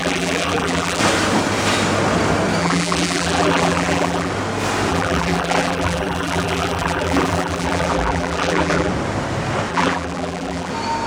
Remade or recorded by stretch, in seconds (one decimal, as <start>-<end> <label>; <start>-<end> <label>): 0.0-1.0 remade; 1.0-2.6 recorded; 2.6-4.3 remade; 4.3-4.9 recorded; 4.9-8.9 remade; 8.9-9.7 recorded; 9.7-10.7 remade; 10.7-11.1 recorded